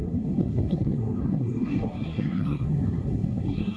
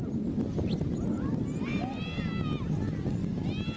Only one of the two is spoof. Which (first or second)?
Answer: first